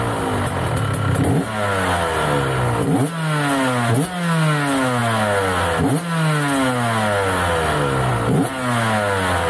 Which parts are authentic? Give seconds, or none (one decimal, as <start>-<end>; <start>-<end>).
0.0-9.5